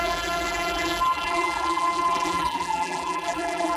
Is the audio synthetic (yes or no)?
yes